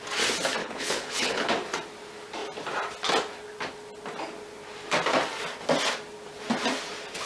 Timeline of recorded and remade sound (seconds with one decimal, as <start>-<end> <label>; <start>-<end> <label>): 0.0-0.6 recorded; 0.6-1.5 remade; 1.5-7.3 recorded

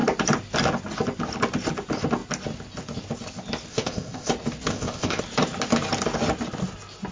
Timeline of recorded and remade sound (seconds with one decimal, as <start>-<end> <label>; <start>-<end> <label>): 0.0-3.7 recorded; 3.7-4.3 remade; 4.3-4.7 recorded; 4.7-5.2 remade; 5.2-7.1 recorded

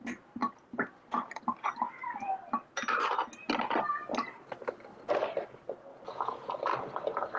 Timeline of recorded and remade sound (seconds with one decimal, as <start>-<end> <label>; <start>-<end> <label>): 0.0-5.9 recorded; 5.9-6.5 remade; 6.5-7.4 recorded

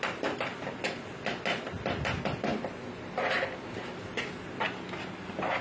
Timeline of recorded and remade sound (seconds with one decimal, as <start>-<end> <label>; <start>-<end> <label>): 0.0-5.6 recorded